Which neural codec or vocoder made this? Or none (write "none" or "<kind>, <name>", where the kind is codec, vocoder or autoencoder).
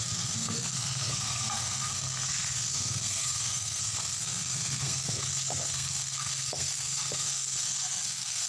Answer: codec, SNAC